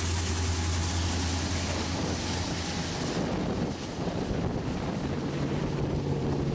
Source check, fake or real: real